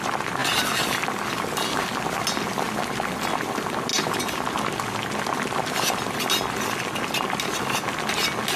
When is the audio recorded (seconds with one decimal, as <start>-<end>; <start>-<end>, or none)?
0.0-8.6